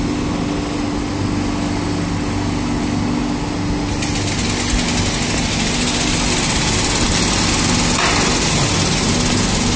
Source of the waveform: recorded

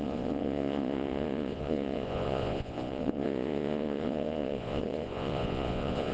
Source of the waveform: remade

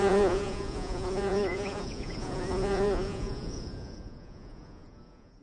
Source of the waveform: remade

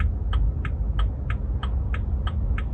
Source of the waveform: recorded